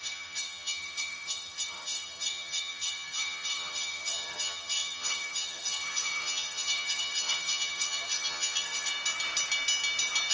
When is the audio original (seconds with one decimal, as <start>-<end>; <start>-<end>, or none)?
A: 8.9-10.3